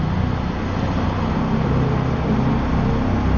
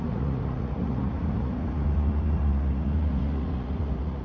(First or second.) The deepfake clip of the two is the second